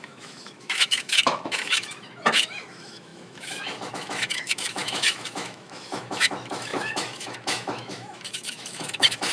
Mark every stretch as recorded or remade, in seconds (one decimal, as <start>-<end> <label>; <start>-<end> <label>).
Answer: 0.0-9.3 remade